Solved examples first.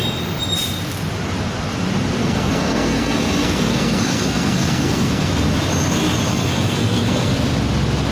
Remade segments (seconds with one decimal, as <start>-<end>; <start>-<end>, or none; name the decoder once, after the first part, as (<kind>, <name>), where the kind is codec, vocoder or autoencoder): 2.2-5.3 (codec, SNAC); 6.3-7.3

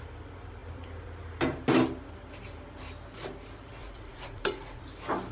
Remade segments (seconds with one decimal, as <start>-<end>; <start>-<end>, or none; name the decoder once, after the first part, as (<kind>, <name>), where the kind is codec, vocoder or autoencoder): 3.8-4.8 (vocoder, Vocos)

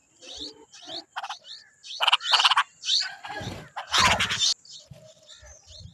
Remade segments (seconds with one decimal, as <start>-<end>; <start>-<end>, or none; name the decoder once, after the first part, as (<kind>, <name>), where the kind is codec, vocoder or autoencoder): none

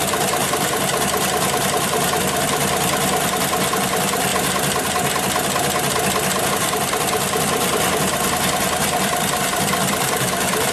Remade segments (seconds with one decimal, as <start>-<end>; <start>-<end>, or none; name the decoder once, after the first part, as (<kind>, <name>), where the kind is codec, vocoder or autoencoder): 0.0-0.9 (vocoder, BigVGAN v2); 1.8-4.3; 6.5-10.7

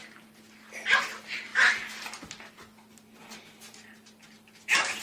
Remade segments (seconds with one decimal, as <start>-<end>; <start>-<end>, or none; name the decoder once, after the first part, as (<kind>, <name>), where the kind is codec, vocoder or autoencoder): 0.0-1.1 (vocoder, BigVGAN v2)

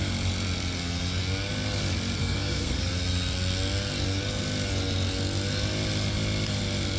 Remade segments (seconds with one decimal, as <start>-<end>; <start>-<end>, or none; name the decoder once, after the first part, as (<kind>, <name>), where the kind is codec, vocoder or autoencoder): 2.2-2.9 (codec, SNAC)